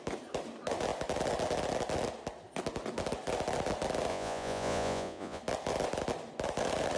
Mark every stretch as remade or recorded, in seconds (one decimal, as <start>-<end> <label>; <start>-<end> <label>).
0.0-4.1 recorded; 4.1-5.4 remade; 5.4-7.0 recorded